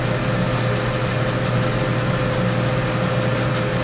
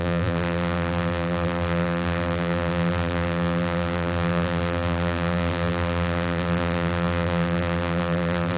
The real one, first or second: first